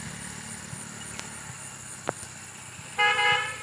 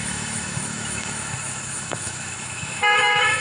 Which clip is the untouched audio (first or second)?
first